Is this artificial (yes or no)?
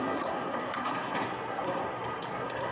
yes